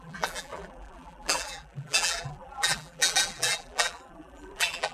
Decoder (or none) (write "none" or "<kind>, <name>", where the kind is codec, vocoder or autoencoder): vocoder, BigVGAN v2